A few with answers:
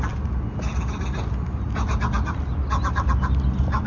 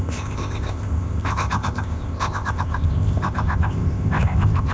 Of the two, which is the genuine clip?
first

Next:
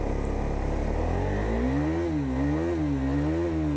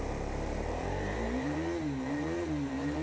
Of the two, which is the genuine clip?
first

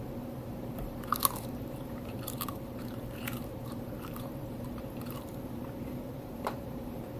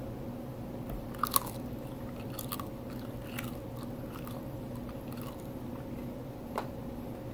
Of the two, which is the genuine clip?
second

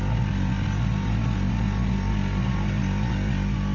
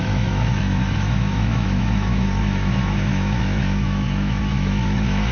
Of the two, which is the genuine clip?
first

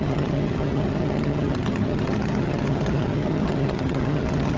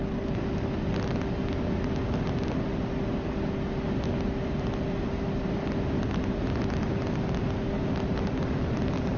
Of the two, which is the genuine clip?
second